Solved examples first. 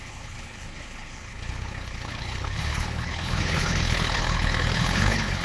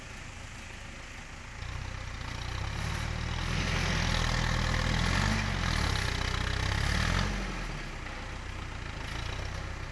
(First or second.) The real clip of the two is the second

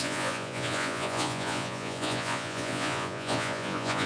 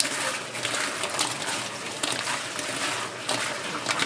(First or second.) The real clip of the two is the second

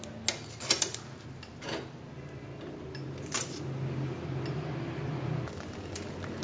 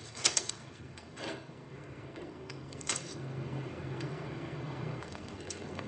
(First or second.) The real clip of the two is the first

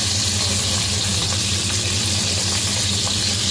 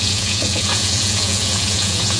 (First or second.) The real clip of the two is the first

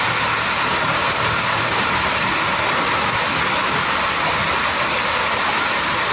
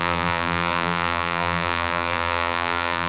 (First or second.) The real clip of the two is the first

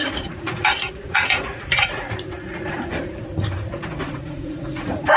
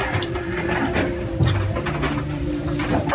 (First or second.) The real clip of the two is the second